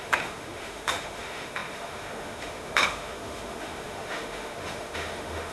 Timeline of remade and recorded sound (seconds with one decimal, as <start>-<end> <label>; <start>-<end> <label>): 0.0-5.5 remade

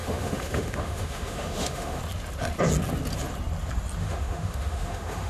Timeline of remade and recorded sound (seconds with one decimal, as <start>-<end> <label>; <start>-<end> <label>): 0.0-2.0 remade; 2.0-4.0 recorded; 4.0-5.3 remade